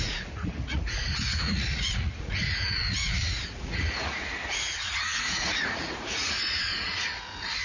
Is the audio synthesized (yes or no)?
yes